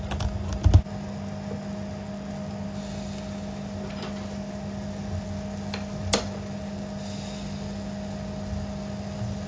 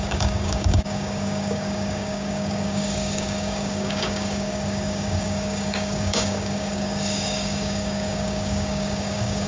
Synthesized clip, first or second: second